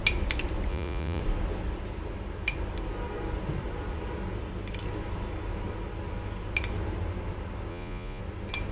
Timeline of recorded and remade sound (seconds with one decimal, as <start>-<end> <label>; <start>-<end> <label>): 0.0-0.7 recorded; 0.7-1.2 remade; 1.2-7.7 recorded; 7.7-8.2 remade; 8.2-8.7 recorded